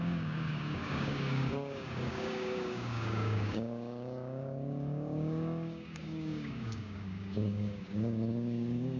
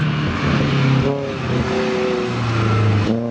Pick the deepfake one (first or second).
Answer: first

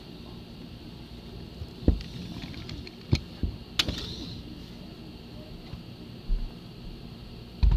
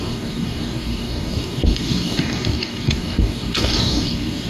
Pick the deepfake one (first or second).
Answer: second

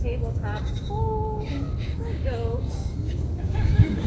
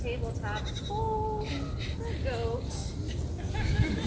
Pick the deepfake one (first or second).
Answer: first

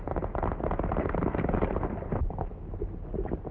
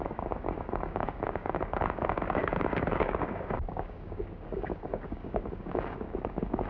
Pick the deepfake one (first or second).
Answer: second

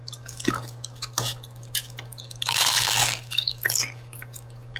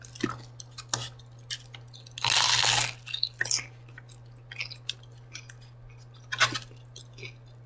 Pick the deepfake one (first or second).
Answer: first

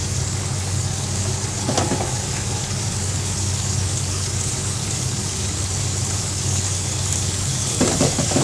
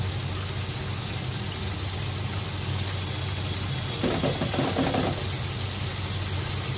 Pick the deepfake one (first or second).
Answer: first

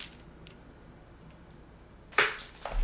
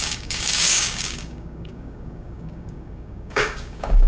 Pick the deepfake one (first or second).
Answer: second